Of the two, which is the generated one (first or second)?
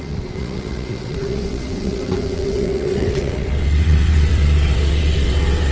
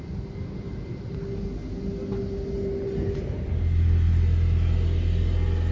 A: first